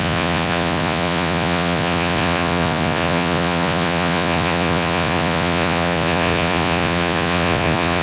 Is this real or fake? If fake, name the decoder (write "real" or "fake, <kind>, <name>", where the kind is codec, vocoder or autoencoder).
fake, vocoder, Vocos